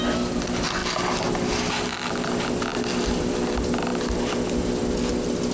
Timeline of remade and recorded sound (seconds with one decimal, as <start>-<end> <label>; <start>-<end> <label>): 0.0-5.5 recorded